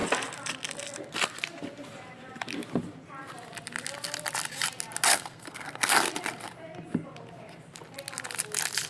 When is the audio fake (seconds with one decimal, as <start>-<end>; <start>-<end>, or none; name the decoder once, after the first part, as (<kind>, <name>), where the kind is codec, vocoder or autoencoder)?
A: 5.1-6.1 (codec, SNAC)